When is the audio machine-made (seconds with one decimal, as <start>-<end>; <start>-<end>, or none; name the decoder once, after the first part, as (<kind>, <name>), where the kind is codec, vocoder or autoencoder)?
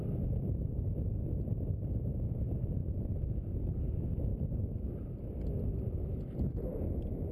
none